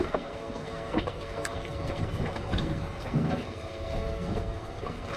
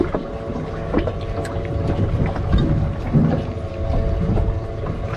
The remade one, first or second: first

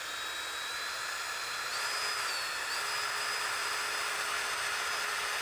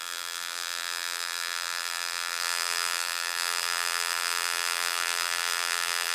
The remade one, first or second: second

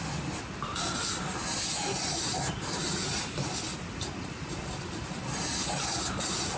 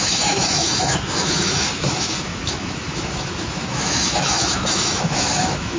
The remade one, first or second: second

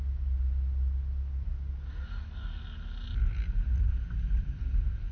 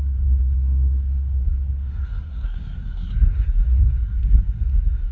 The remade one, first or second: second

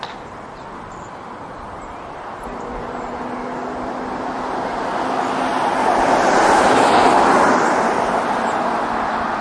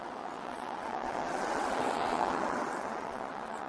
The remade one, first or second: second